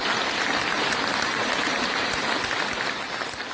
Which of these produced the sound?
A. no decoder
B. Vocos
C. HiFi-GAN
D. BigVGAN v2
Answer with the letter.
A